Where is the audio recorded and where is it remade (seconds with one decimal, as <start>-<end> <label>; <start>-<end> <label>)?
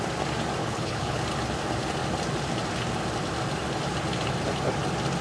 0.0-0.6 recorded; 0.6-1.2 remade; 1.2-5.2 recorded